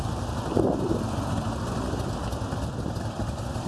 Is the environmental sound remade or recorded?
recorded